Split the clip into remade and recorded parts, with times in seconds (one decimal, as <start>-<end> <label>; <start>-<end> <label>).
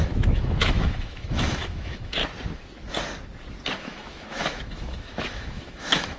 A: 0.0-2.2 remade; 2.2-3.8 recorded; 3.8-6.2 remade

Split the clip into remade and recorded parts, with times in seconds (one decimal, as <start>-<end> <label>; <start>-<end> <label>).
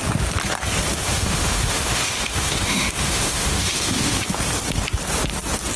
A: 0.0-0.9 recorded; 0.9-4.2 remade; 4.2-5.8 recorded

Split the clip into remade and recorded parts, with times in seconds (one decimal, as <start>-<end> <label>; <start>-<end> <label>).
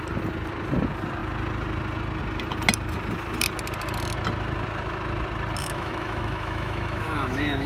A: 0.0-5.6 recorded; 5.6-7.7 remade